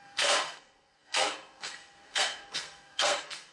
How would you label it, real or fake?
fake